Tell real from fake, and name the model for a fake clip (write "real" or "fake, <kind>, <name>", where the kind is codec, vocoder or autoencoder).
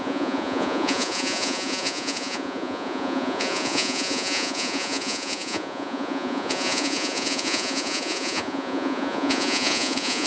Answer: fake, vocoder, Vocos